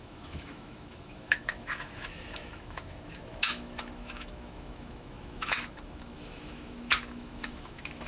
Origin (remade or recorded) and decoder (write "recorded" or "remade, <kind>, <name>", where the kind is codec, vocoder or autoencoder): remade, autoencoder, DAC-VAE